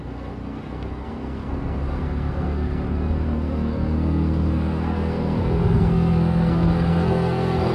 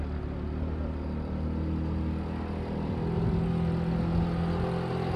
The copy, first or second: first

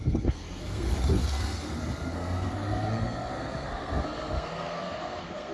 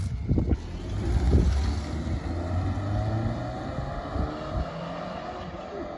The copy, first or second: first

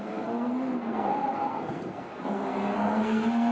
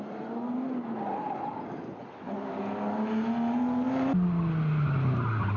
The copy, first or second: first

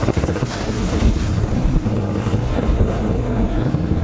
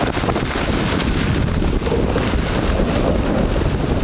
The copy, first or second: first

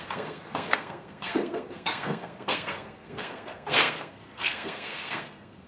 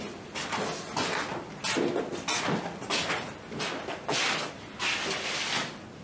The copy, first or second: first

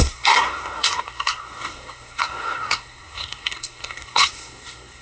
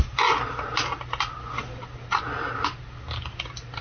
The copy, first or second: first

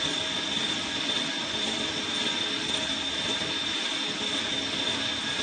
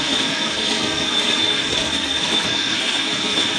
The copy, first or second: second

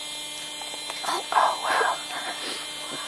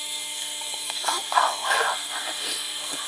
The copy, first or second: second